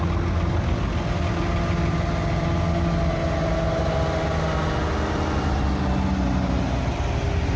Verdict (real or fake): real